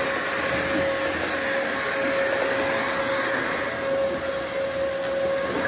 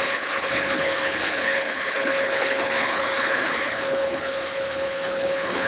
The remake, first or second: second